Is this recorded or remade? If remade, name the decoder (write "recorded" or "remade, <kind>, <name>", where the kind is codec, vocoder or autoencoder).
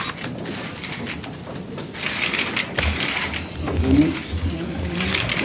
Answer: recorded